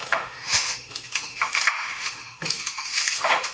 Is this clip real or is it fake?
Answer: fake